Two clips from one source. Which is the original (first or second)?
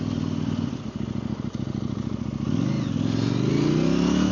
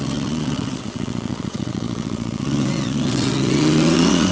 first